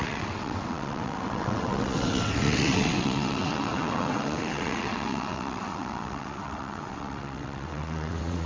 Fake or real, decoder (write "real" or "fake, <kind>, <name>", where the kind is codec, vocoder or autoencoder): fake, vocoder, WaveNeXt